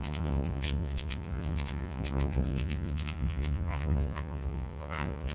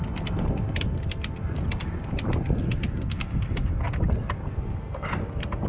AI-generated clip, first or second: first